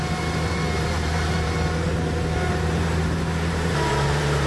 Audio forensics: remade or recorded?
remade